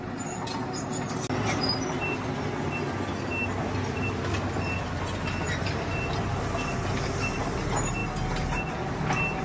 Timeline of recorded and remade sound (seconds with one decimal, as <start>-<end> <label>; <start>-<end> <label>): 0.0-9.4 recorded